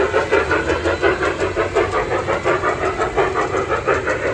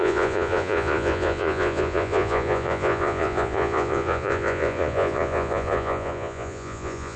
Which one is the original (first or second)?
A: first